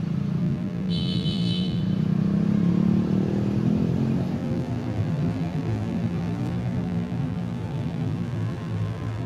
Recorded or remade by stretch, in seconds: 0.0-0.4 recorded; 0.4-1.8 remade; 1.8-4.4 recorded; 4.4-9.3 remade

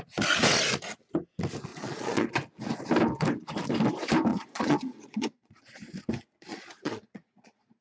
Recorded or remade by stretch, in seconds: 0.0-1.7 recorded; 1.7-2.3 remade; 2.3-4.3 recorded; 4.3-5.6 remade; 5.6-6.5 recorded; 6.5-7.8 remade